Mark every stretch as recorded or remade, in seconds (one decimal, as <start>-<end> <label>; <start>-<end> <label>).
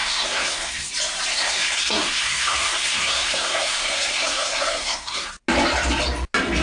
0.0-0.9 remade; 0.9-1.3 recorded; 1.3-5.3 remade; 5.3-6.6 recorded